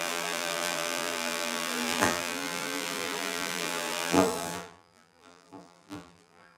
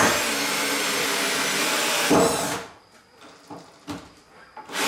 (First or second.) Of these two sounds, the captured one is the second